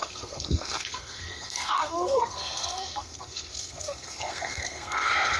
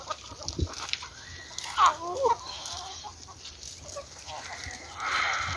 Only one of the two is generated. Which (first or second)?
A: first